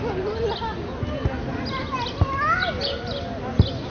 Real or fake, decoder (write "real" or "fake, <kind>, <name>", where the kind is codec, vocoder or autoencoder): real